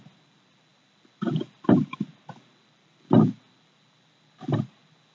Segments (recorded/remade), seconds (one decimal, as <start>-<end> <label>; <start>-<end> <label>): 0.0-5.1 recorded